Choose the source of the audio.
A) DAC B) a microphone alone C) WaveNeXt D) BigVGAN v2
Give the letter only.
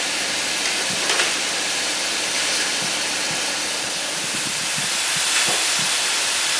D